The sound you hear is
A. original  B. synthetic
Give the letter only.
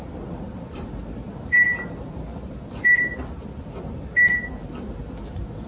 A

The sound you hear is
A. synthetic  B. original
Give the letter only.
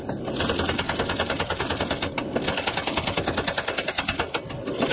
B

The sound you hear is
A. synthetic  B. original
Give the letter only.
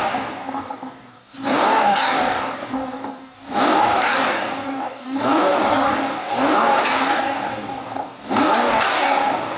A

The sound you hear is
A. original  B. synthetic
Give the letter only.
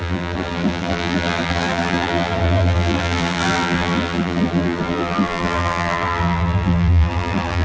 B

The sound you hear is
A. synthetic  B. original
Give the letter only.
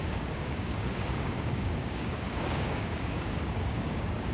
A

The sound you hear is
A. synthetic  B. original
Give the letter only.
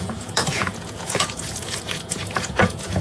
A